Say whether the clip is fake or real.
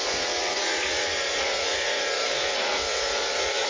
fake